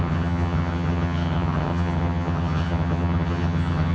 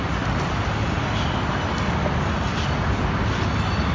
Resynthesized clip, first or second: first